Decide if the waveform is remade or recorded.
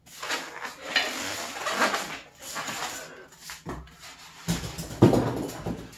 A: recorded